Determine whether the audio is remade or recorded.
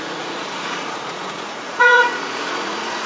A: remade